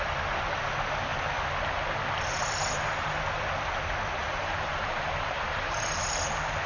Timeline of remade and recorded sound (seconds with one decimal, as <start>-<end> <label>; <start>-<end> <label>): 0.0-4.2 recorded; 4.2-6.1 remade; 6.1-6.7 recorded